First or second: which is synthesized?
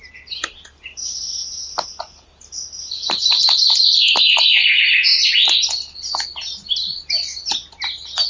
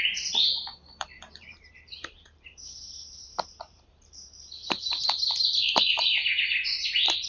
second